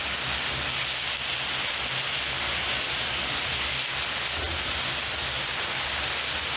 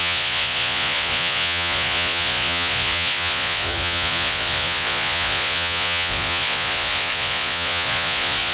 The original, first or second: first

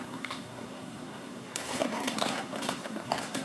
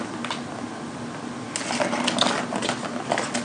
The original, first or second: second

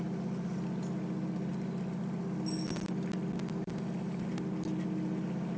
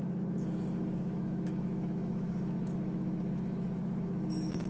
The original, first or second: first